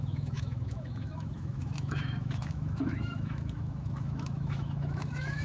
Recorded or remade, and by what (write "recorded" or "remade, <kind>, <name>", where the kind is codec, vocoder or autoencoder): remade, autoencoder, DAC-VAE